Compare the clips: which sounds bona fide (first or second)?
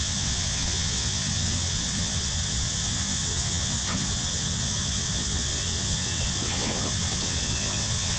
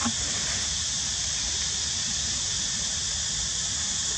second